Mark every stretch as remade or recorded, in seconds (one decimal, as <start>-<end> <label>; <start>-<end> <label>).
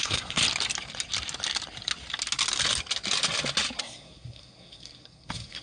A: 0.0-0.4 remade; 0.4-3.8 recorded; 3.8-5.6 remade